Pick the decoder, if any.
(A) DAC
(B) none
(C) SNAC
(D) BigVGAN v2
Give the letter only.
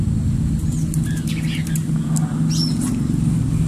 B